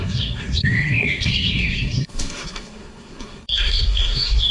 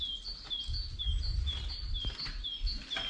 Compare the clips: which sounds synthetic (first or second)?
first